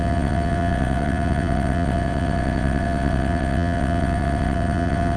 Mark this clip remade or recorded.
remade